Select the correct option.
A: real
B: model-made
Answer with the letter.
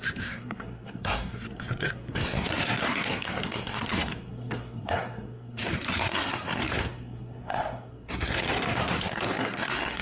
B